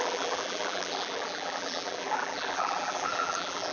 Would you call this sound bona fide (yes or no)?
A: no